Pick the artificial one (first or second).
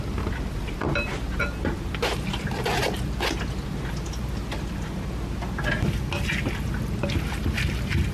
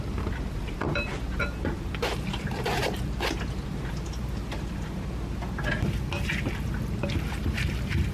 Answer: second